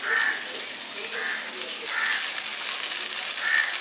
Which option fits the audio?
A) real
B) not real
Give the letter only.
A